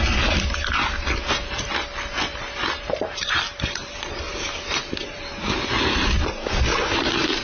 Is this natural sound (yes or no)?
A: no